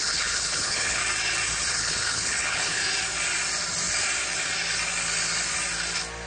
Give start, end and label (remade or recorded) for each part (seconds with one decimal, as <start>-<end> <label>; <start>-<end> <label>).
0.0-1.0 remade; 1.0-1.7 recorded; 1.7-2.8 remade; 2.8-6.3 recorded